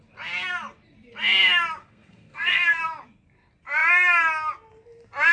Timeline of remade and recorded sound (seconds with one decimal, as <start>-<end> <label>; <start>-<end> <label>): 0.0-1.8 recorded; 1.8-2.8 remade; 2.8-5.3 recorded